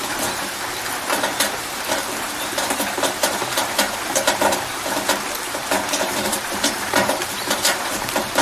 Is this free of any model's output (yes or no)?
no